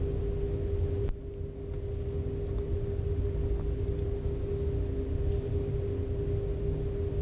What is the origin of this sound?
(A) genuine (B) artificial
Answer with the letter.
A